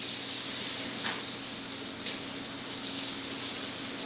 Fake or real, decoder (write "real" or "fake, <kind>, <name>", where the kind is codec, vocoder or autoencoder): real